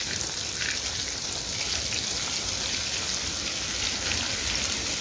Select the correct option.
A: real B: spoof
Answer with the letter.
A